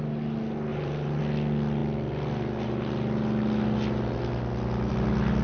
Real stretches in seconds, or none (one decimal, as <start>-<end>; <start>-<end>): 0.0-0.7; 1.2-5.4